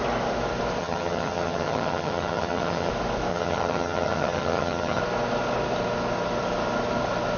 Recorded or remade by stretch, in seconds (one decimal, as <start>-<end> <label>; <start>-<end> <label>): 0.0-0.8 recorded; 0.8-2.9 remade; 2.9-3.3 recorded; 3.3-5.0 remade; 5.0-7.4 recorded